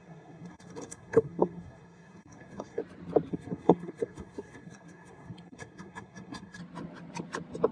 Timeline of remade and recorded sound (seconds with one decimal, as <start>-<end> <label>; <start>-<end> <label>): 0.0-2.8 remade; 2.8-3.3 recorded; 3.3-6.6 remade; 6.6-7.7 recorded